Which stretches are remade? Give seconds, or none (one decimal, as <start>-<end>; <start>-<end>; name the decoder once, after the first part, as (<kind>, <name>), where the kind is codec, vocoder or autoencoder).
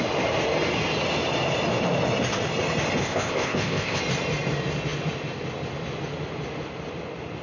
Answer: 3.0-4.0 (codec, ZipCodec)